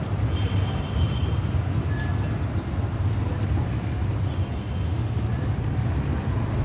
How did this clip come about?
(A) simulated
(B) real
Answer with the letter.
B